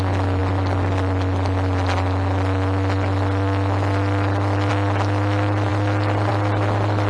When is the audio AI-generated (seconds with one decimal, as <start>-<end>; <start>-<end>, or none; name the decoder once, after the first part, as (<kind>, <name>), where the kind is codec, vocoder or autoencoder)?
none